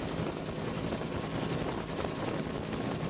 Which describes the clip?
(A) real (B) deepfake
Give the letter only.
A